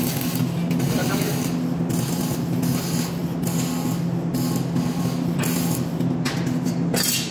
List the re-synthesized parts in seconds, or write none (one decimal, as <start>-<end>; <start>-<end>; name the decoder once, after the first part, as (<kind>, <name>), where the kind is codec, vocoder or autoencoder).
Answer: none